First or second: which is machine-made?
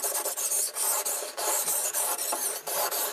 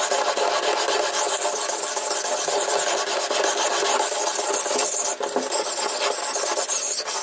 first